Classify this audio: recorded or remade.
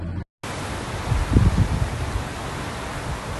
recorded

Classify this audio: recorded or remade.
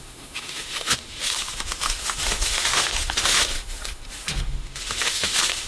remade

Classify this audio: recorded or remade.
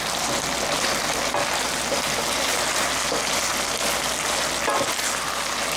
recorded